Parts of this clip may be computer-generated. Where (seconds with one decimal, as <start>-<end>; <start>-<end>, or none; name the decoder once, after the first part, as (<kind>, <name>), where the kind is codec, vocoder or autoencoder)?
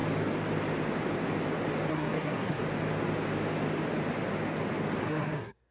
1.9-2.6 (codec, SNAC); 5.0-5.7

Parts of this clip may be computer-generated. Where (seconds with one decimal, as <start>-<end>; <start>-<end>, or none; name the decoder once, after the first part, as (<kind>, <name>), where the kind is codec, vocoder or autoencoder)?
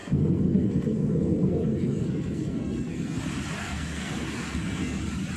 0.0-3.2 (codec, SNAC); 3.6-5.0